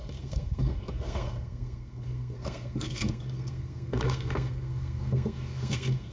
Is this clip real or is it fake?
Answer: fake